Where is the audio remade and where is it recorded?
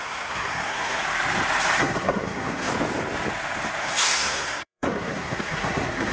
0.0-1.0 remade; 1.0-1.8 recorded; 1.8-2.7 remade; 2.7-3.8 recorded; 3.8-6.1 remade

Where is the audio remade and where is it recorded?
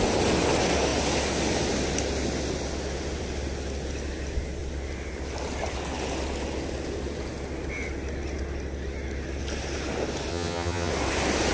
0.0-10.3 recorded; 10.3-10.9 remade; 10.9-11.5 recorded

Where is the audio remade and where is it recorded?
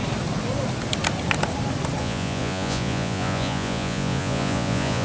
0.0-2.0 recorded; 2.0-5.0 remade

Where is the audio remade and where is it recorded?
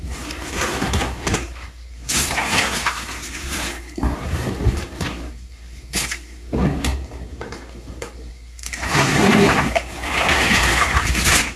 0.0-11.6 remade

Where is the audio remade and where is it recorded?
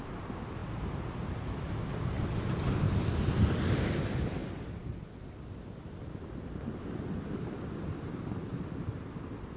0.0-9.6 recorded